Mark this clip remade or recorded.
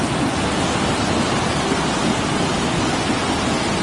recorded